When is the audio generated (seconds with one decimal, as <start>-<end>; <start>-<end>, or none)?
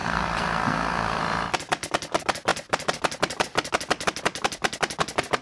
0.0-1.2